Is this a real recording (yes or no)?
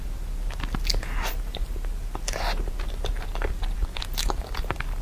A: yes